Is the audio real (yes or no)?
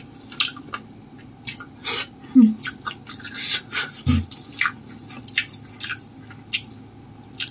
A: yes